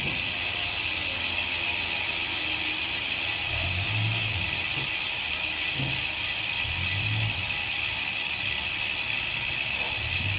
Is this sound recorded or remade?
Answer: recorded